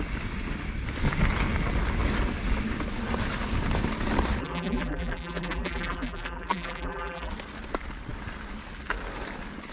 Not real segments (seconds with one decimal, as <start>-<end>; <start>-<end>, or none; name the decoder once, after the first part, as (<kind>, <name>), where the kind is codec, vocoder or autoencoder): 4.4-7.3 (vocoder, BigVGAN v2)